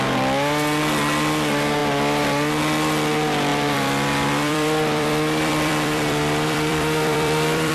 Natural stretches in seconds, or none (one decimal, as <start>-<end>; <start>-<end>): 0.0-3.5